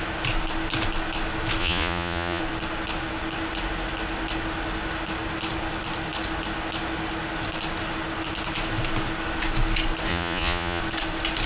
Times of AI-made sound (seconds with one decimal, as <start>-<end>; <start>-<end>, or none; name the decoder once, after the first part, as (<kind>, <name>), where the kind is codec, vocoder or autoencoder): 1.6-2.4 (vocoder, Vocos); 10.1-10.8